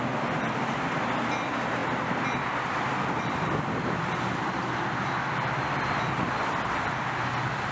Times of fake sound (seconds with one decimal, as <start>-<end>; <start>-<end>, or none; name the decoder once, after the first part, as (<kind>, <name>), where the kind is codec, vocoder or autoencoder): none